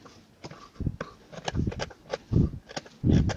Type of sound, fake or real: real